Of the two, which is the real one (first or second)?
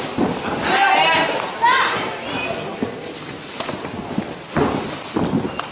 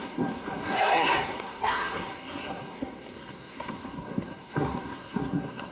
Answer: first